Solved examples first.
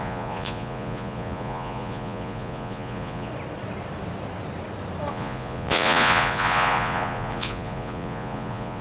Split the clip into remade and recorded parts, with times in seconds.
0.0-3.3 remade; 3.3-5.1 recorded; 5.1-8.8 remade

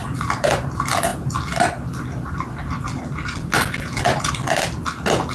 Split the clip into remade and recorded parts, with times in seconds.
0.0-5.3 recorded

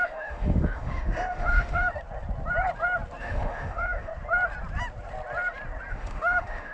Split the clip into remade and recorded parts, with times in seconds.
0.0-1.9 remade; 1.9-3.2 recorded; 3.2-4.1 remade; 4.1-5.9 recorded; 5.9-6.7 remade

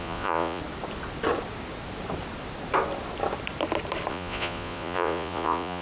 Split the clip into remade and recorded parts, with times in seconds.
0.0-0.6 remade; 0.6-4.1 recorded; 4.1-5.8 remade